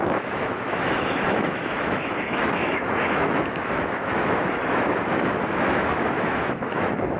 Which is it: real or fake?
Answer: fake